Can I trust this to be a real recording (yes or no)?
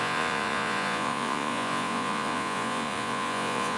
no